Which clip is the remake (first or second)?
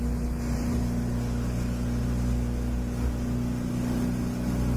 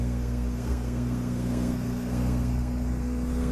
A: second